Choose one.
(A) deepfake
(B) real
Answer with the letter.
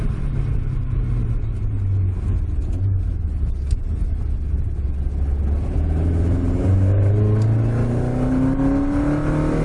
B